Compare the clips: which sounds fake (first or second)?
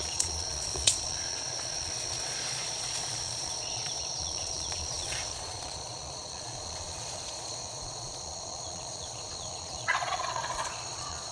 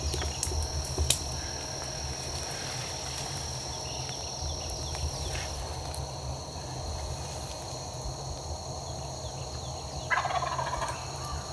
first